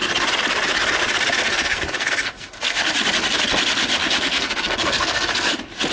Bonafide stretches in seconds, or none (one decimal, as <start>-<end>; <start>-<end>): 0.0-1.5; 2.9-4.0; 5.5-5.9